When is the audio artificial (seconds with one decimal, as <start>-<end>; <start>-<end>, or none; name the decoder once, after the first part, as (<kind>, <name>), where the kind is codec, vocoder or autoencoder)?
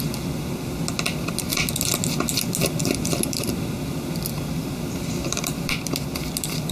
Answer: 0.0-1.5 (vocoder, BigVGAN v2); 2.8-6.7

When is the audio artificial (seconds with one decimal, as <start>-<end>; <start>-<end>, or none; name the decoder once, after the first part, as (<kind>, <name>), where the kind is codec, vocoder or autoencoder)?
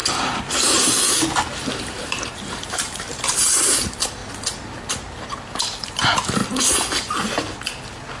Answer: 1.8-4.2 (vocoder, BigVGAN v2); 4.9-6.4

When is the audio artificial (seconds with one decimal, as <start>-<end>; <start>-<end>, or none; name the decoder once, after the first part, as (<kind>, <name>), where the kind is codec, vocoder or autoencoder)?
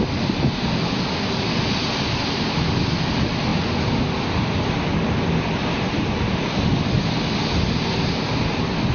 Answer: none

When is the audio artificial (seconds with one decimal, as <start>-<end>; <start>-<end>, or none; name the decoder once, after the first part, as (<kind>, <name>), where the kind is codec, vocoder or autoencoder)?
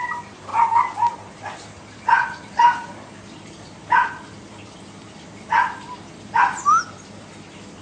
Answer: 0.0-0.5 (vocoder, BigVGAN v2); 1.3-7.8